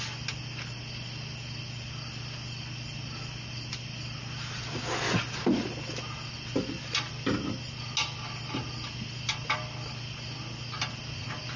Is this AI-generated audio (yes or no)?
no